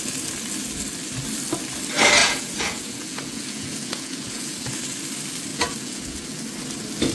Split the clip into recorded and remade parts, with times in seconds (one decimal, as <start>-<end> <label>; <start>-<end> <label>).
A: 0.0-2.2 recorded; 2.2-4.7 remade; 4.7-5.5 recorded; 5.5-6.2 remade; 6.2-7.1 recorded